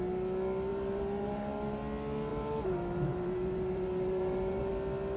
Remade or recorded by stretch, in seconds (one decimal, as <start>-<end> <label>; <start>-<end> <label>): 0.0-0.7 recorded; 0.7-1.8 remade; 1.8-2.3 recorded; 2.3-4.7 remade; 4.7-5.2 recorded